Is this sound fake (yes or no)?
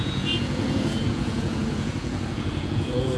yes